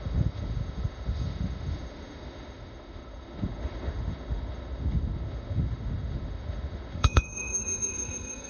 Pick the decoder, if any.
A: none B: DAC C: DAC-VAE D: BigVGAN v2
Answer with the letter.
C